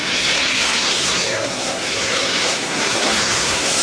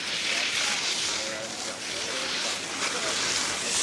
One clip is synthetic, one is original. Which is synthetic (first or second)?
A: first